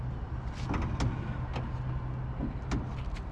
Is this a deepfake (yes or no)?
no